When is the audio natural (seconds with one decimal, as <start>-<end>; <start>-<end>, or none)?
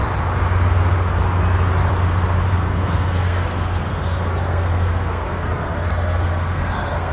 0.0-2.5